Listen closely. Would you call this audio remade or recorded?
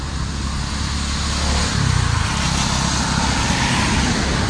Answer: recorded